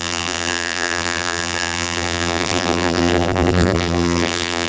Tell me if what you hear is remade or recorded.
remade